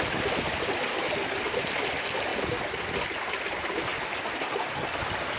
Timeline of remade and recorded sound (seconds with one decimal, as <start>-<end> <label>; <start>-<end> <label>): 0.0-5.4 recorded